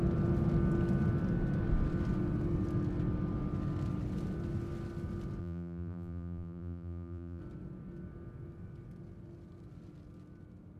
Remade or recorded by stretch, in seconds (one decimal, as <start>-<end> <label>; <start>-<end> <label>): 0.0-5.4 recorded; 5.4-7.4 remade; 7.4-10.8 recorded